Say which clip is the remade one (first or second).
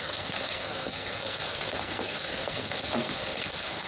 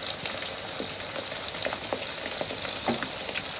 first